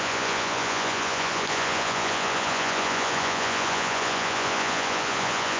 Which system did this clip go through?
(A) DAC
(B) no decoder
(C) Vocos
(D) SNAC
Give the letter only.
C